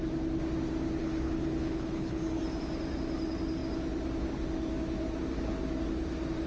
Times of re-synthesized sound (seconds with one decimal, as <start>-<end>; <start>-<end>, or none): 1.0-2.4

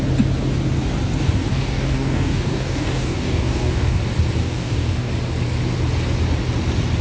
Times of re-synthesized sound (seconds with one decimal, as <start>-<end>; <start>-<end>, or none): 1.5-4.0; 4.4-5.1

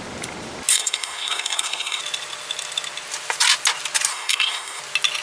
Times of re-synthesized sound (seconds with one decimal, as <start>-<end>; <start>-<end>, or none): 0.7-2.0; 4.1-4.8

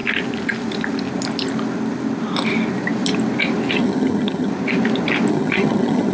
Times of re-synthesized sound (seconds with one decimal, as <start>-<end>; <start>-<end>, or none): 3.7-4.5; 5.3-6.1

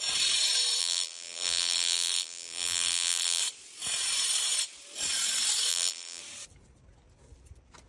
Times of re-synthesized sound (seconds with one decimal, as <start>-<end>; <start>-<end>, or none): 0.8-3.4; 5.7-6.2

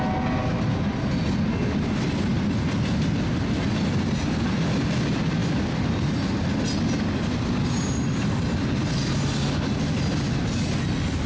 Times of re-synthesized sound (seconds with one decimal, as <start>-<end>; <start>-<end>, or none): none

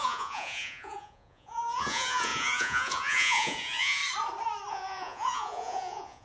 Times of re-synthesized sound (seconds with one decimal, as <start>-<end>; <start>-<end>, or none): 0.0-4.0; 4.7-6.2